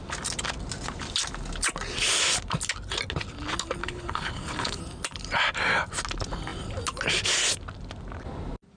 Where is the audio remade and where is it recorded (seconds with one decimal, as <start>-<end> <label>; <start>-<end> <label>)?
0.0-3.8 recorded; 3.8-4.8 remade; 4.8-8.8 recorded